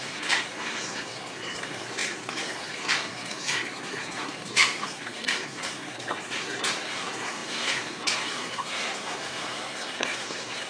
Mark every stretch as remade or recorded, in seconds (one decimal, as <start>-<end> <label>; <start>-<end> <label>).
0.0-10.7 remade